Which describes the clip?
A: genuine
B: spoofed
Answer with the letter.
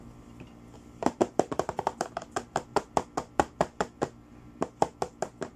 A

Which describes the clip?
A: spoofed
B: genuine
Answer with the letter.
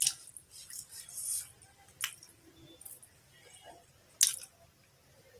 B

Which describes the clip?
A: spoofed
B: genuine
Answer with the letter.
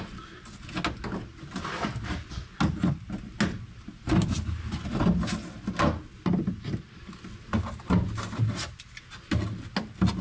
B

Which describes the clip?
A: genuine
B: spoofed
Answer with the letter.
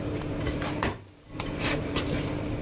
B